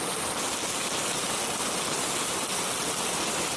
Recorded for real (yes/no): yes